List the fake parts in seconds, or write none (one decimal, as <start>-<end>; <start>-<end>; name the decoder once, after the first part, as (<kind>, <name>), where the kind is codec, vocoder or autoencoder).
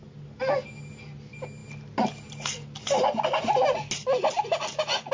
none